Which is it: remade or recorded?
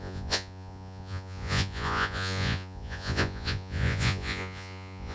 remade